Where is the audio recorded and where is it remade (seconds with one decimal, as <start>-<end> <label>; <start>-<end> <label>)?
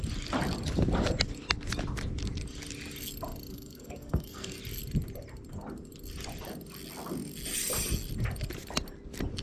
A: 0.0-3.5 recorded; 3.5-4.6 remade; 4.6-9.4 recorded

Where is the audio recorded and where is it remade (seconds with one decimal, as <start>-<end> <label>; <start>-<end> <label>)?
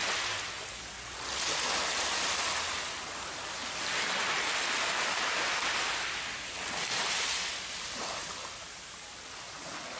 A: 0.0-10.0 recorded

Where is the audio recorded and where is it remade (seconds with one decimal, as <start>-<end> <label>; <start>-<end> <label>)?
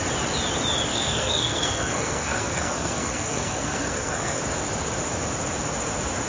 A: 0.0-0.9 recorded; 0.9-4.4 remade; 4.4-6.3 recorded